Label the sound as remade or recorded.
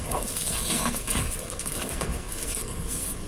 remade